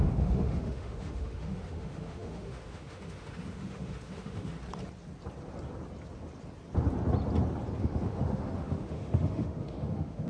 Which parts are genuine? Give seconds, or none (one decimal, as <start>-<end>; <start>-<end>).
4.6-7.8